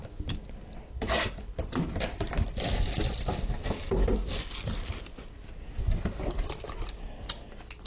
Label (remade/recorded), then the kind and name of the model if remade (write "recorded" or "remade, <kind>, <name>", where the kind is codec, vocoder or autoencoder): recorded